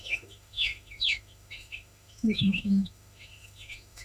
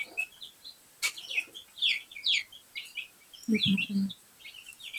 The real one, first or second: second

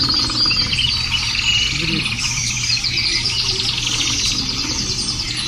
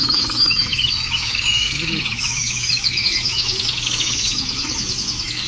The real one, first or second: first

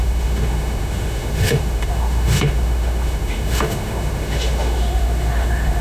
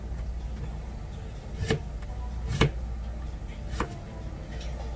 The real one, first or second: second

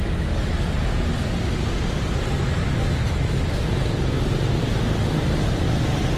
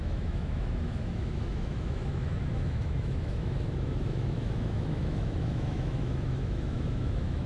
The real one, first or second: first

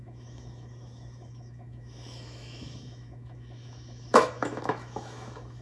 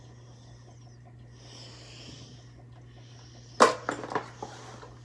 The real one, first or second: second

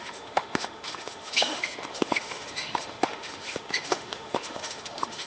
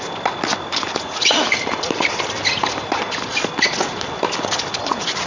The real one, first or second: second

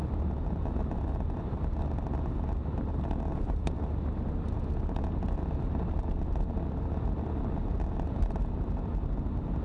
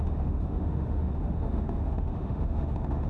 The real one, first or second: first